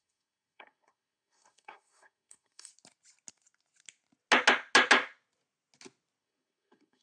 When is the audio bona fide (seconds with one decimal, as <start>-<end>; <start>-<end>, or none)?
2.7-6.2